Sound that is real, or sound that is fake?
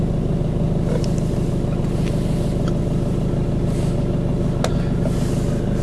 real